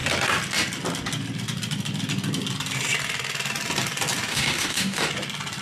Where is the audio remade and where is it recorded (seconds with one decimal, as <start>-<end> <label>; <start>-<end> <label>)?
0.0-4.3 recorded; 4.3-5.1 remade; 5.1-5.6 recorded